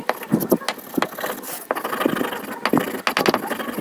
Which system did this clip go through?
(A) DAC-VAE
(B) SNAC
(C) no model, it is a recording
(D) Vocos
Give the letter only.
C